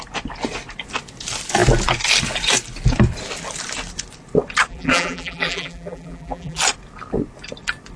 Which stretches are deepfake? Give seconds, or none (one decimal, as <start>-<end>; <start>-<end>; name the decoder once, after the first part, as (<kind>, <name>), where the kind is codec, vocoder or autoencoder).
4.7-6.6 (vocoder, BigVGAN v2)